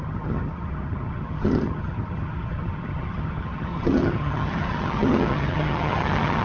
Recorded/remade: remade